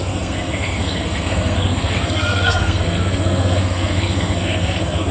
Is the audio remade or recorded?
remade